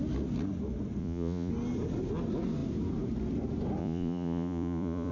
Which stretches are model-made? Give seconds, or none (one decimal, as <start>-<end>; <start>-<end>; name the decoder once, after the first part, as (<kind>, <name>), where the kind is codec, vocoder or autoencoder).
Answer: 1.0-1.5 (vocoder, Vocos); 3.8-5.1